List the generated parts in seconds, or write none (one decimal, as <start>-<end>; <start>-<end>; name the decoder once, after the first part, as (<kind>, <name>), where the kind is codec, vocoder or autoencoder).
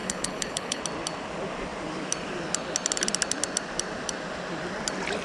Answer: 0.0-0.8 (codec, HILCodec)